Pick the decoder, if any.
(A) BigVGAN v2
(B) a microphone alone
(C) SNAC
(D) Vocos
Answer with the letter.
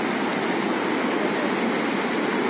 B